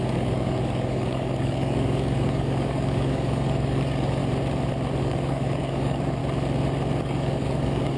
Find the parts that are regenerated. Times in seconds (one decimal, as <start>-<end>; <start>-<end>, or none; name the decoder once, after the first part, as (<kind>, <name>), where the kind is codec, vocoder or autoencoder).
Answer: 0.0-4.2 (codec, DAC); 5.0-6.2; 7.0-8.0